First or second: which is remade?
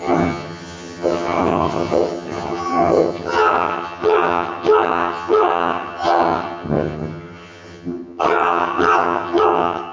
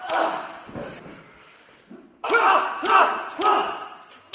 first